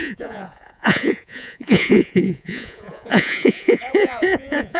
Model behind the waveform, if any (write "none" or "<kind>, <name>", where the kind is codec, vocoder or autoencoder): vocoder, Vocos